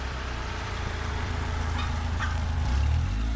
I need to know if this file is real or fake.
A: fake